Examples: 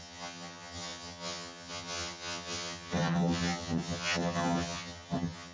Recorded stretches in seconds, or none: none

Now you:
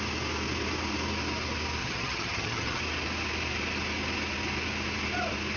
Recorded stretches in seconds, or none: 0.0-1.8; 2.8-5.6